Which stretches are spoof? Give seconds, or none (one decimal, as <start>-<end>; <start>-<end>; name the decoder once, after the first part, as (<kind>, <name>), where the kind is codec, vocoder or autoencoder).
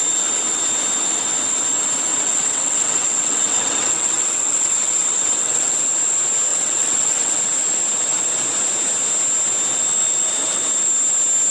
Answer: 2.1-5.8 (vocoder, WaveNeXt); 6.5-7.4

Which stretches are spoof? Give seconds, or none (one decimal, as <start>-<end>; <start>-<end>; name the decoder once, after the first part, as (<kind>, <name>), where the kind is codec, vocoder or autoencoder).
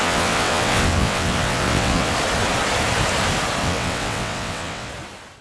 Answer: 0.0-2.1 (vocoder, WaveNeXt); 3.6-4.9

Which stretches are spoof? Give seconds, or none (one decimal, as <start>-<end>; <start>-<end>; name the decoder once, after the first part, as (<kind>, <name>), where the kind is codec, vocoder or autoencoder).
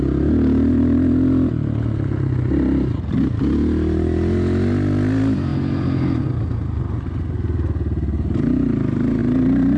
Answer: none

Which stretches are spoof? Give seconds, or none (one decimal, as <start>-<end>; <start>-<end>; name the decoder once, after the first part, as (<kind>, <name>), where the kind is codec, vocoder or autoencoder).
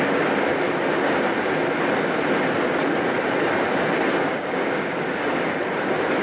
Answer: 4.3-5.5 (codec, DAC)